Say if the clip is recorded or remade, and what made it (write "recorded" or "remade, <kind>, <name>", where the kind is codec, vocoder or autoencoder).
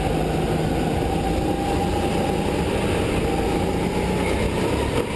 recorded